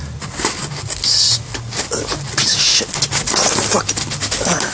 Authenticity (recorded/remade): recorded